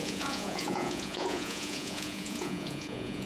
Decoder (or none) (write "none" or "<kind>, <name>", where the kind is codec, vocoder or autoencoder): vocoder, Vocos